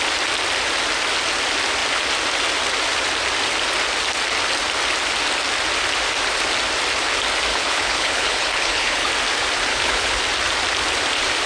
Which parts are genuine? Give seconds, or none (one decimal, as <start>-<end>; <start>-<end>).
0.0-7.5; 9.1-9.7; 10.2-11.5